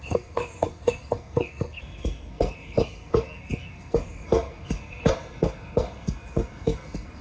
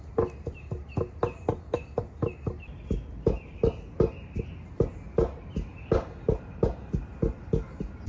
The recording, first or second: second